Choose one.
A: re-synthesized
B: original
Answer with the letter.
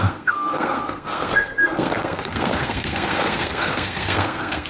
A